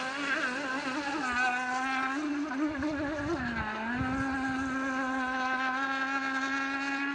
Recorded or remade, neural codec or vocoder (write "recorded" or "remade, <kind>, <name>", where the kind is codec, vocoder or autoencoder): recorded